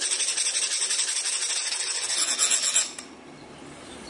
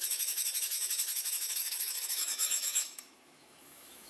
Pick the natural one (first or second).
first